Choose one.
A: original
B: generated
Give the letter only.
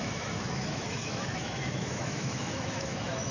B